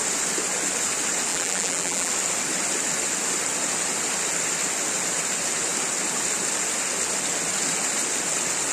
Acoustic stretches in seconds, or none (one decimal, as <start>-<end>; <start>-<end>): 0.0-1.3; 2.1-8.7